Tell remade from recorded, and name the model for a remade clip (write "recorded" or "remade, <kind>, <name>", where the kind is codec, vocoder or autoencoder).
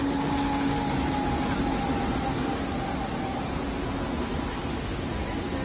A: recorded